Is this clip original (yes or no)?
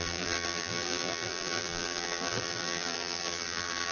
no